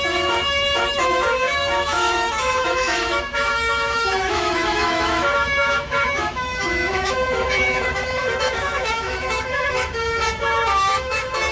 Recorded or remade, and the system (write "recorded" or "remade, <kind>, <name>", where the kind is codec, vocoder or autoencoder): remade, autoencoder, DAC-VAE